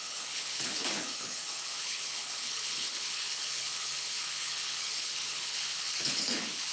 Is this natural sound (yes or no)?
no